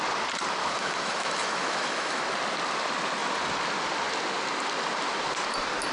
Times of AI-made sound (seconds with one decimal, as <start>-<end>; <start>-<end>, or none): 0.6-2.2